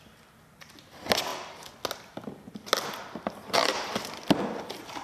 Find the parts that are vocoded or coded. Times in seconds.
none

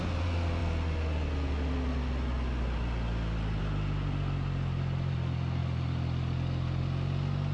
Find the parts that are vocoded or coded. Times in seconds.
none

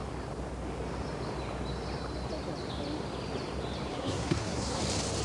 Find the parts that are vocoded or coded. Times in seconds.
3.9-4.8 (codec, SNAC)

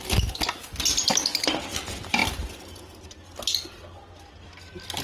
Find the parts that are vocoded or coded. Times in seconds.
none